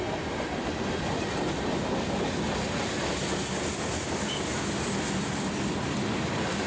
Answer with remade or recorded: recorded